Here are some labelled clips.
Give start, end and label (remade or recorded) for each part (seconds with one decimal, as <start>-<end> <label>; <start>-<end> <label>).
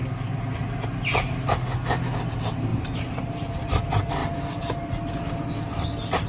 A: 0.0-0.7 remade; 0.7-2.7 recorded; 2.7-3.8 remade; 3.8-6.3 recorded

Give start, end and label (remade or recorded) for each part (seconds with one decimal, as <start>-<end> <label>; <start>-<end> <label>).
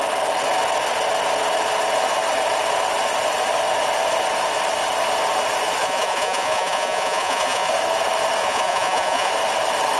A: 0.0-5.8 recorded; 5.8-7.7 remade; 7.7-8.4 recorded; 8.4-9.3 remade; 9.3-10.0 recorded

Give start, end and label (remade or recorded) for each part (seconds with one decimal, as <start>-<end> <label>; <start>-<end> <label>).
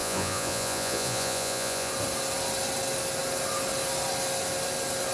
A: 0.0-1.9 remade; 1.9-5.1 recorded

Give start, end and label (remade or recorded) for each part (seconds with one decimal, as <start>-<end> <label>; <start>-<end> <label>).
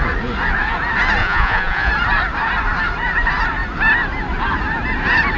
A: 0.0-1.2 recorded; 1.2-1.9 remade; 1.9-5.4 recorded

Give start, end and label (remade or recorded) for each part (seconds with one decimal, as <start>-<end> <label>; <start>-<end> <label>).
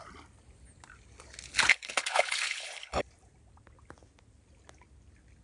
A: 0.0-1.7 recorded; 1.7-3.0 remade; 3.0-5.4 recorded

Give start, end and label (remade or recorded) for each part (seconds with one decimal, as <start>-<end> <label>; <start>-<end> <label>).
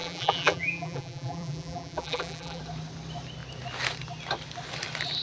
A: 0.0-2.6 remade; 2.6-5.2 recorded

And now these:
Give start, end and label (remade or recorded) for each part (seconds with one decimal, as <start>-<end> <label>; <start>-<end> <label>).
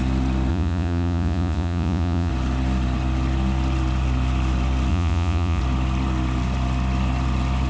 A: 0.0-0.5 recorded; 0.5-2.3 remade; 2.3-4.9 recorded; 4.9-5.6 remade; 5.6-7.7 recorded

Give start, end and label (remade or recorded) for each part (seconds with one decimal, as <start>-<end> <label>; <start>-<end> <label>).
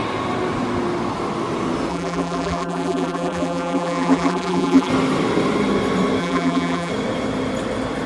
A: 0.0-1.9 recorded; 1.9-4.9 remade; 4.9-6.2 recorded; 6.2-6.9 remade; 6.9-8.1 recorded